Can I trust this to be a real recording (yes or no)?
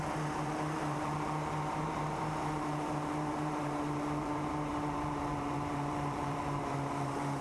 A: no